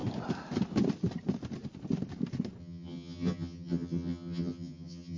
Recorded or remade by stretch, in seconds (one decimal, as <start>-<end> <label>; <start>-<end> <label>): 0.0-2.6 recorded; 2.6-5.2 remade